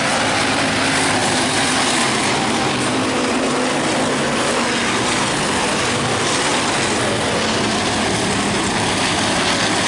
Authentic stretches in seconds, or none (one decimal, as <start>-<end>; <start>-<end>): 0.0-1.2; 2.1-9.9